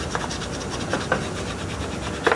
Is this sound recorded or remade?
recorded